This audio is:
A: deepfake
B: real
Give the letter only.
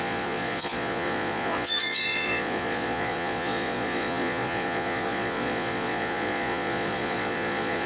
A